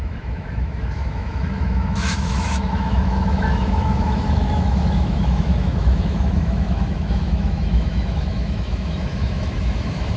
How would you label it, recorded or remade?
remade